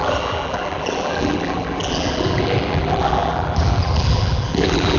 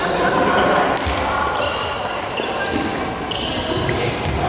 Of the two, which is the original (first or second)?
second